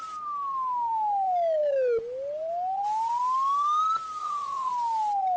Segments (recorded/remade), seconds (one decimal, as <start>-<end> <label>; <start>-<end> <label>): 0.0-4.2 recorded; 4.2-4.7 remade; 4.7-5.4 recorded